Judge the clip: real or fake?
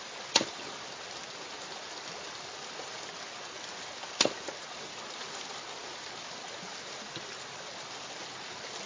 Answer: real